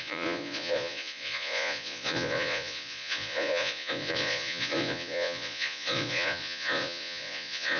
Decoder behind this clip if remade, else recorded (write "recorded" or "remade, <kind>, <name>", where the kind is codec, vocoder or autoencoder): remade, vocoder, Vocos